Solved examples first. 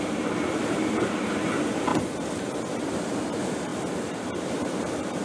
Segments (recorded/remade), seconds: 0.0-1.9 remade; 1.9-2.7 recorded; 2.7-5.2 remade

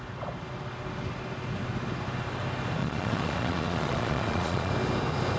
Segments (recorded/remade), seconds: 0.0-2.8 recorded; 2.8-4.7 remade; 4.7-5.4 recorded

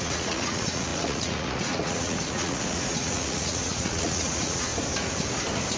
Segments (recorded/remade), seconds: 0.0-4.7 remade; 4.7-5.8 recorded